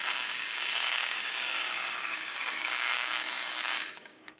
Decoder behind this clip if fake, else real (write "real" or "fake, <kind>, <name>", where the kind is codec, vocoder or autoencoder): fake, codec, DAC